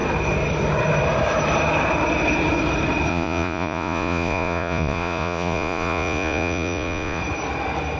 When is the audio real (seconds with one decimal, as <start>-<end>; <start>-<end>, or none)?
0.0-3.1; 7.2-8.0